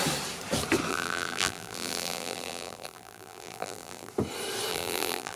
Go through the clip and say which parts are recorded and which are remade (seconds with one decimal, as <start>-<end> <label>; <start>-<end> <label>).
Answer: 0.0-0.9 recorded; 0.9-4.1 remade; 4.1-4.7 recorded; 4.7-5.4 remade